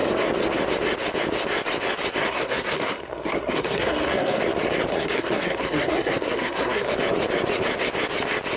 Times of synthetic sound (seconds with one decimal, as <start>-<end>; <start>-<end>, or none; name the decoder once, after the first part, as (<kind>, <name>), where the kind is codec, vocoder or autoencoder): 2.2-4.4 (codec, SNAC); 4.9-6.9